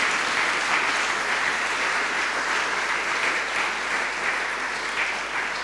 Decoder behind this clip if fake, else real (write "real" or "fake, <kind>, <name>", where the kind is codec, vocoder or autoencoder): real